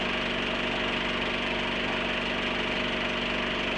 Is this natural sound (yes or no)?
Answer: yes